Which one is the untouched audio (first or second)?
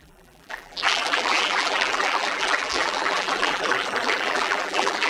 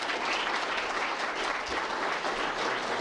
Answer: second